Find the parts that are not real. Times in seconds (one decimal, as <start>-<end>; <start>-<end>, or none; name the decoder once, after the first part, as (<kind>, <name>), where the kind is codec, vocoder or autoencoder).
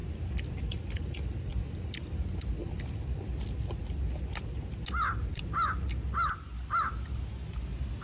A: none